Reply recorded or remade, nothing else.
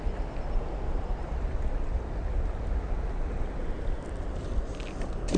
recorded